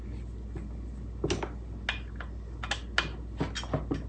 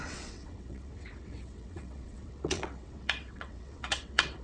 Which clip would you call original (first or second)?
first